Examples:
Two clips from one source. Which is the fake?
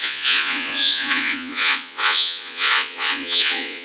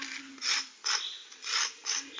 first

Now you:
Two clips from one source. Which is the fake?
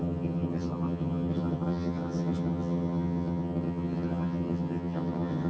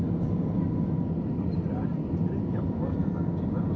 first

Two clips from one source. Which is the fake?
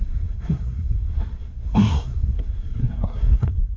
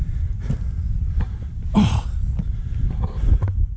first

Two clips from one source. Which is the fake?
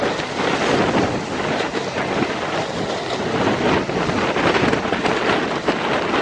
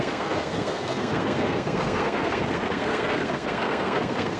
second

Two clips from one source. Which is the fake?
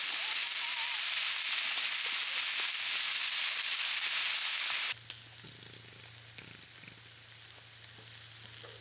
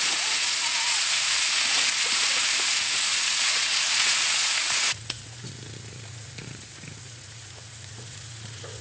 second